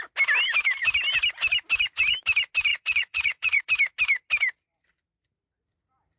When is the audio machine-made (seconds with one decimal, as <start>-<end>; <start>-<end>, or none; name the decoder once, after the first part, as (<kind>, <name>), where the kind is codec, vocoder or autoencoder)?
2.7-3.6 (vocoder, Vocos)